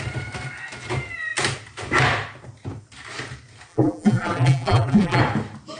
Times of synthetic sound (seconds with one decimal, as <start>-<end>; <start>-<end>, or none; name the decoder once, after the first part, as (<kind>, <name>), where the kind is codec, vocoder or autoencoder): 3.7-5.2 (vocoder, BigVGAN v2)